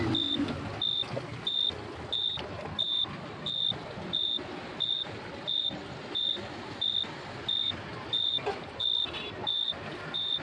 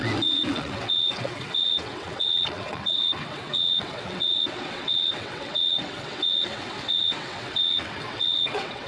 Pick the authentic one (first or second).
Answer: first